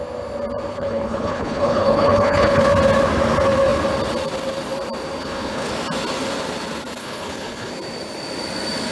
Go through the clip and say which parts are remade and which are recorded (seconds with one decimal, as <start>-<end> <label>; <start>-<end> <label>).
0.0-0.7 recorded; 0.7-2.6 remade; 2.6-5.2 recorded; 5.2-5.7 remade; 5.7-7.0 recorded; 7.0-7.7 remade; 7.7-8.9 recorded